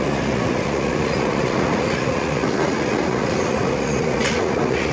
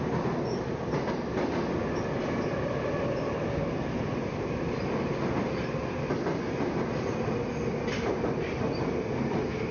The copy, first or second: first